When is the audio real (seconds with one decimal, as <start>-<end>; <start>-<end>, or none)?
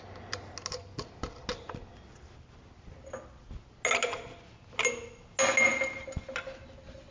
0.0-7.1